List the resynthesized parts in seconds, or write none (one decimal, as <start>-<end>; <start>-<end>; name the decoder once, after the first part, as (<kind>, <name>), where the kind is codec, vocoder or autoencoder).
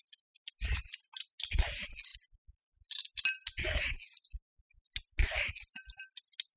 none